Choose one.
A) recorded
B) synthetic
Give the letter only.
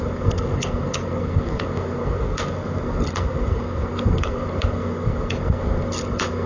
B